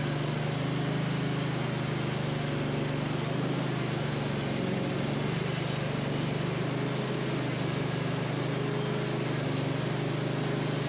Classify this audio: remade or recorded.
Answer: recorded